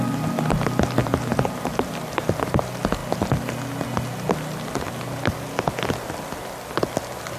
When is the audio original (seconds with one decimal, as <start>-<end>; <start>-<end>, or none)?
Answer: 0.0-1.0; 1.9-7.4